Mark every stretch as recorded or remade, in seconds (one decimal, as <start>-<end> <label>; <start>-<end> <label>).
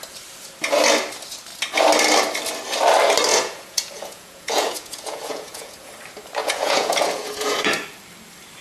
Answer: 0.0-3.3 recorded; 3.3-5.9 remade; 5.9-6.4 recorded; 6.4-7.7 remade; 7.7-8.6 recorded